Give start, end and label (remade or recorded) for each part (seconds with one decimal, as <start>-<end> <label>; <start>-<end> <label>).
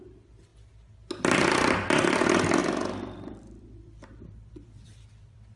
0.0-0.5 remade; 0.5-1.5 recorded; 1.5-5.6 remade